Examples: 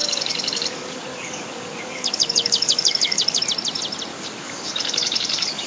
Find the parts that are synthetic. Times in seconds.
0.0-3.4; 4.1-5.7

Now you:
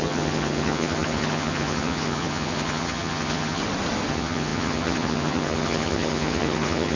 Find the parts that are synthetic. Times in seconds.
0.0-3.6; 4.1-7.0

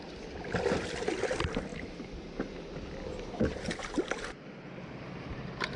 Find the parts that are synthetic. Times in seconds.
none

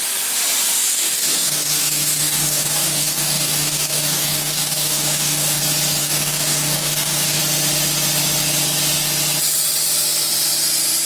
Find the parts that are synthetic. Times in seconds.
0.9-5.6; 6.0-7.4

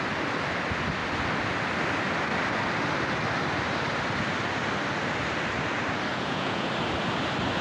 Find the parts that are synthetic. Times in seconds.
6.1-6.7

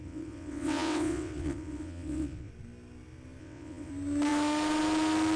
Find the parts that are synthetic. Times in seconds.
0.0-2.5; 3.4-3.9

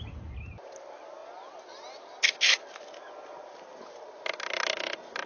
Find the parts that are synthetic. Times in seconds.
none

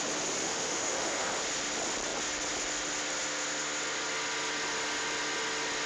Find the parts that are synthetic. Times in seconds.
0.4-1.3